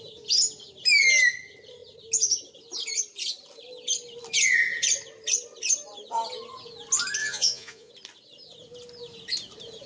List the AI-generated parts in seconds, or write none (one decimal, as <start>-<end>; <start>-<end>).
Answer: 7.2-7.9